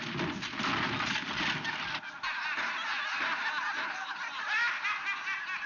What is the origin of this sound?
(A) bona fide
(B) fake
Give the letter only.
A